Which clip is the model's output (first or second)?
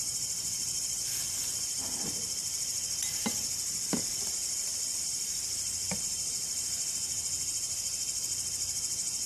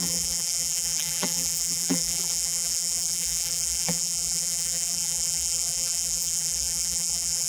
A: second